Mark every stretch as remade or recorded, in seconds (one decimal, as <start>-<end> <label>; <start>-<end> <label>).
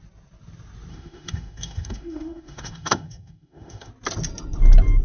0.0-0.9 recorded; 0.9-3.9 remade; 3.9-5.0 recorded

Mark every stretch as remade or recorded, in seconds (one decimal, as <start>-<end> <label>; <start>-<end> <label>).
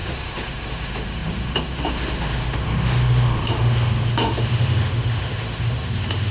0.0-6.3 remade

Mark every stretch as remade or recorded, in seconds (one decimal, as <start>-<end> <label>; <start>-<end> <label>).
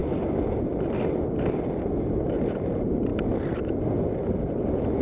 0.0-5.0 recorded